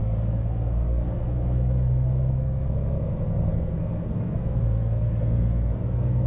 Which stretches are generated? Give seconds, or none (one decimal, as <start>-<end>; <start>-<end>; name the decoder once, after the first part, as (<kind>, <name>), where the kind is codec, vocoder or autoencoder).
0.0-6.3 (codec, SNAC)